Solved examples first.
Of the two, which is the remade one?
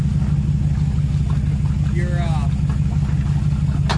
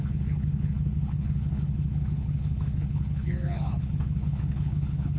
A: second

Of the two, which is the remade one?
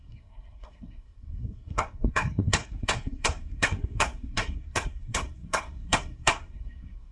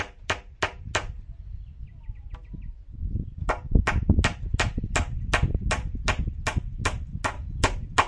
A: first